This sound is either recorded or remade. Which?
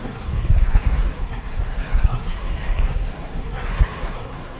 remade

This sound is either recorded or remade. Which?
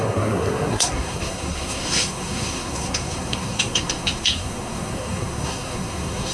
remade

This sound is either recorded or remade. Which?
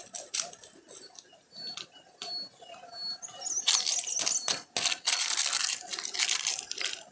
recorded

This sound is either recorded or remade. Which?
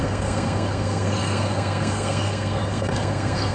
remade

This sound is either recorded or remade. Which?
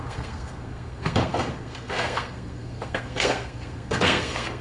remade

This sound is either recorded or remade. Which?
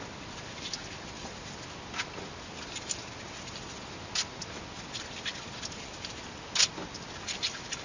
recorded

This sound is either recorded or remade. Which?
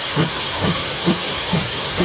remade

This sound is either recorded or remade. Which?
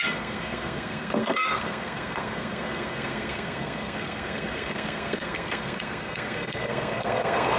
remade